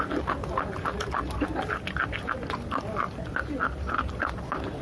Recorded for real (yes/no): yes